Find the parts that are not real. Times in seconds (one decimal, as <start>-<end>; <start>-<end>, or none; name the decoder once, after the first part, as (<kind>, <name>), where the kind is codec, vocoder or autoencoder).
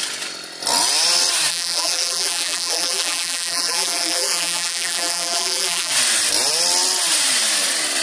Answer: 1.5-5.9 (vocoder, BigVGAN v2)